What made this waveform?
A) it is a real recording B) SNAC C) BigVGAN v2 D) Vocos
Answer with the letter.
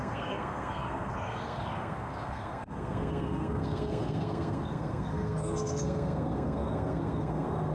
B